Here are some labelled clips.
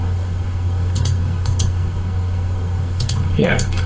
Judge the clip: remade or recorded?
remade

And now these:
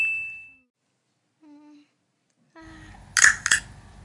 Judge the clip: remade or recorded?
recorded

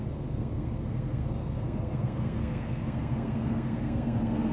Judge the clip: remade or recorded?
remade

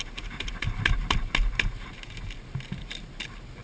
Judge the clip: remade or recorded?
recorded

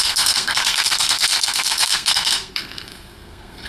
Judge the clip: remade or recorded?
remade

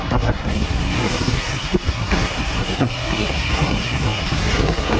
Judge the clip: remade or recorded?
remade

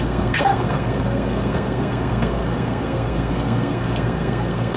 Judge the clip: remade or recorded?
remade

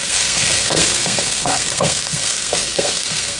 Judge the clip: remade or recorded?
remade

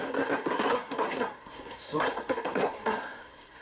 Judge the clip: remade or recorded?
remade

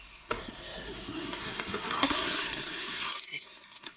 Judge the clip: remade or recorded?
remade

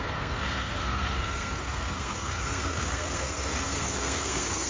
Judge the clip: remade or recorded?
remade